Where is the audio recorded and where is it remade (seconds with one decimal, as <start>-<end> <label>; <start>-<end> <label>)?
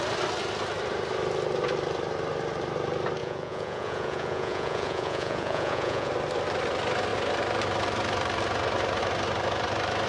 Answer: 0.0-3.2 recorded; 3.2-6.1 remade; 6.1-10.1 recorded